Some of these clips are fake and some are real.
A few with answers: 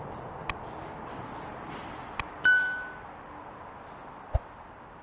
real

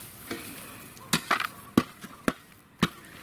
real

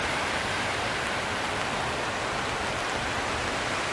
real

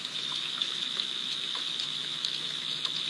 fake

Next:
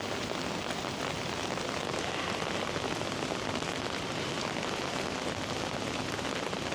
real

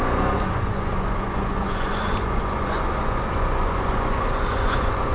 fake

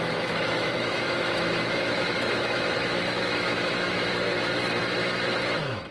fake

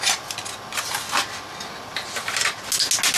real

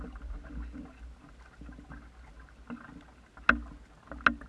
real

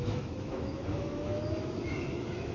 fake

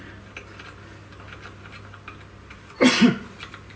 real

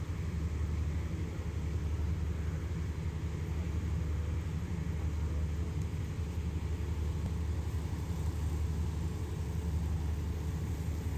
real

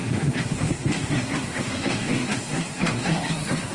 fake